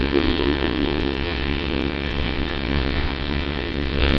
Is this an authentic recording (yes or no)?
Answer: no